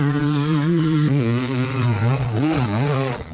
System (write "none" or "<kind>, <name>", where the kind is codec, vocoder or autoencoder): vocoder, Vocos